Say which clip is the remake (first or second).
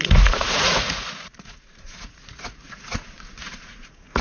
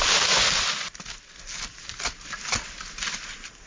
first